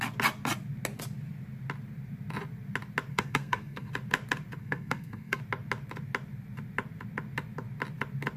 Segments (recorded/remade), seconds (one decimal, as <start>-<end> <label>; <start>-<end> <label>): 0.0-3.1 recorded; 3.1-3.9 remade; 3.9-4.6 recorded; 4.6-5.4 remade; 5.4-8.4 recorded